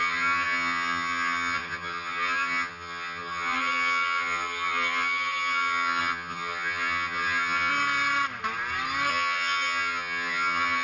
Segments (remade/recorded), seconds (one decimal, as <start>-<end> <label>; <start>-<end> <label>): 0.0-7.7 remade; 7.7-9.1 recorded; 9.1-10.8 remade